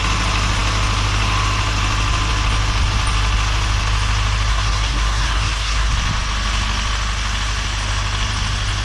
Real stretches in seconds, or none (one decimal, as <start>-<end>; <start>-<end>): 0.0-4.5; 5.9-8.8